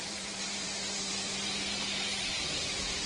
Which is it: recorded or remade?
remade